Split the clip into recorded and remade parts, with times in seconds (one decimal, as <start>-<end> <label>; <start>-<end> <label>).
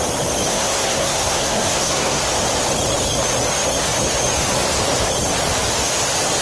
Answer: 0.0-0.5 recorded; 0.5-2.2 remade; 2.2-6.4 recorded